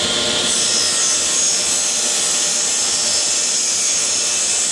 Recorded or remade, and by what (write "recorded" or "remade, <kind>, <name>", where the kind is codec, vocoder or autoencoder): recorded